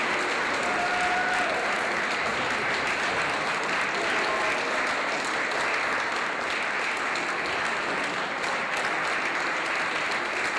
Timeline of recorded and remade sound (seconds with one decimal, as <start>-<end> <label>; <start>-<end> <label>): 0.0-10.6 recorded